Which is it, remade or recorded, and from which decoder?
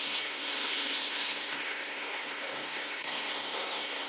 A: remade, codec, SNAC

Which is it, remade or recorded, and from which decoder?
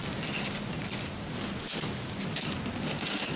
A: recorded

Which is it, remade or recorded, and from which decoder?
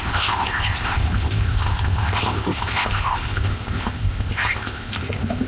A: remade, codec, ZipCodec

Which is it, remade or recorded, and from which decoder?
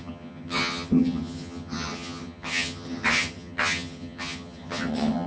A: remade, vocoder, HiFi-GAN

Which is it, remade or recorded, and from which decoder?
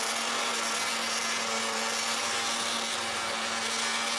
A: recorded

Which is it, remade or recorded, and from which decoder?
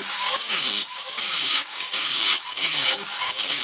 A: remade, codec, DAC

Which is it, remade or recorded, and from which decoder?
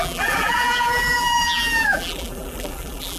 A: remade, vocoder, BigVGAN v2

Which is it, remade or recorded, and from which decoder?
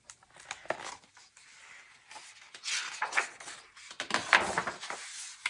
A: recorded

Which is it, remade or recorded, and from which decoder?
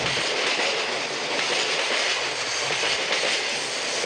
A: recorded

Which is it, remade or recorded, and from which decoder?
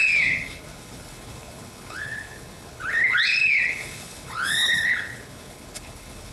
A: remade, codec, HILCodec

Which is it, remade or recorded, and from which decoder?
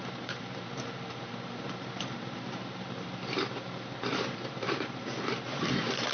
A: remade, vocoder, BigVGAN v2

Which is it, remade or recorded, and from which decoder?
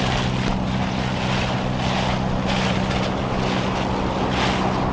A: recorded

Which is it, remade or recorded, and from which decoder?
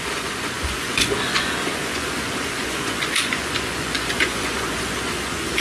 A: remade, vocoder, Vocos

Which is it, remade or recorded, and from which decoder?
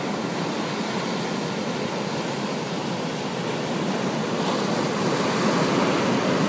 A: recorded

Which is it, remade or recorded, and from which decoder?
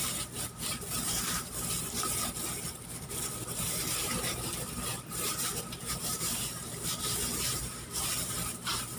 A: remade, vocoder, BigVGAN v2